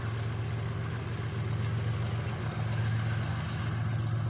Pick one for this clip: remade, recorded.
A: recorded